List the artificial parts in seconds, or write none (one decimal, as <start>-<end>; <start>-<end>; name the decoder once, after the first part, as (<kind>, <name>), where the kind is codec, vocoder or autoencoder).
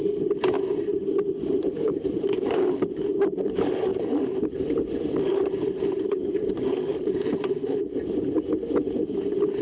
0.9-2.6 (vocoder, BigVGAN v2); 3.9-6.5; 6.9-7.5